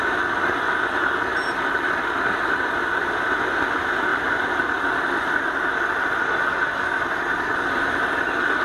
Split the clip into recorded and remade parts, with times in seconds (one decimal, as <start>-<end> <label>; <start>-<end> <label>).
0.0-1.3 recorded; 1.3-3.1 remade; 3.1-4.1 recorded; 4.1-6.4 remade; 6.4-8.6 recorded